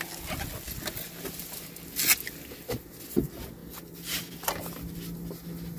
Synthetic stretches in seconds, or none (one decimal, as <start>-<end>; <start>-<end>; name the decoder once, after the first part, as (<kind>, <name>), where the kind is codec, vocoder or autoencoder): none